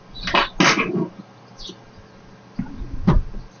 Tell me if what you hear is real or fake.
real